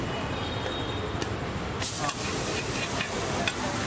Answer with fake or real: real